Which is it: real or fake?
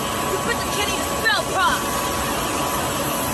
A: real